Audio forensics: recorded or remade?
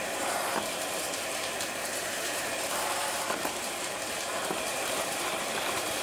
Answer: remade